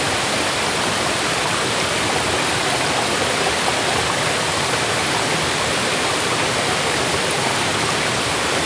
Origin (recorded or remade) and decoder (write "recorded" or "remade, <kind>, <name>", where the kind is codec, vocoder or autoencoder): recorded